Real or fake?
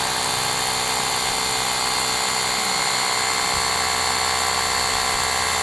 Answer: real